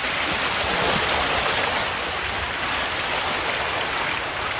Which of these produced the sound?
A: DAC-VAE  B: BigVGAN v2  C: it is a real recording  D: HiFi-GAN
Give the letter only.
C